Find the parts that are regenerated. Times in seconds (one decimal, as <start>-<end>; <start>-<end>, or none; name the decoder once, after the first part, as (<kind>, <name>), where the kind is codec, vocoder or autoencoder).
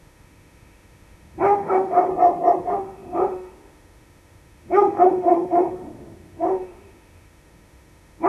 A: 0.0-2.1 (autoencoder, DAC-VAE); 2.6-8.3